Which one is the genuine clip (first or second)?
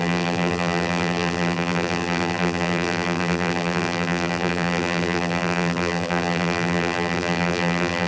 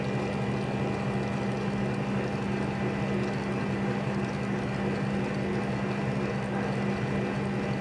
second